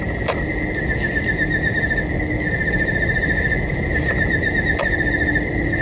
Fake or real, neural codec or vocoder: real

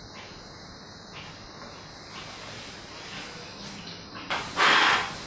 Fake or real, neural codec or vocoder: real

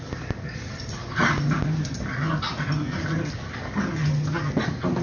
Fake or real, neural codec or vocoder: real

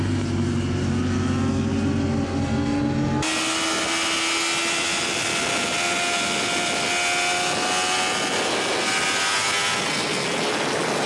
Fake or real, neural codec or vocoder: real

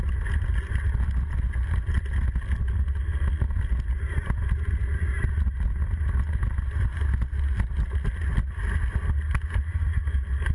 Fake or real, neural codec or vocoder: real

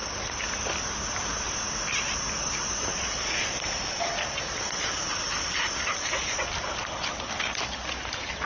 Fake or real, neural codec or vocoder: real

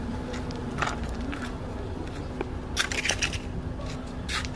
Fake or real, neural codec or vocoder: real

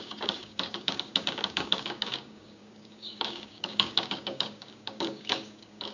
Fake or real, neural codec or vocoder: fake, codec, DAC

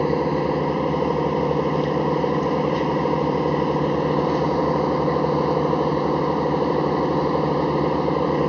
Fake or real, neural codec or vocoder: real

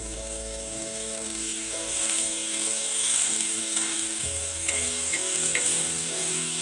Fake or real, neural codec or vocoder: fake, codec, DAC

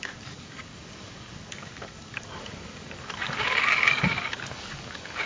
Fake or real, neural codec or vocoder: fake, codec, DAC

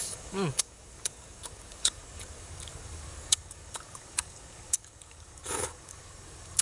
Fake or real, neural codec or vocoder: fake, codec, DAC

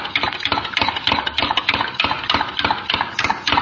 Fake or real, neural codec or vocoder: real